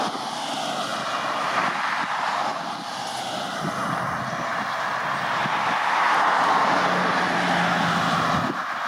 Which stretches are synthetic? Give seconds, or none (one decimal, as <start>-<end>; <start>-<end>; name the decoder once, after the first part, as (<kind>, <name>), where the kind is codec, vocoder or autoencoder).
none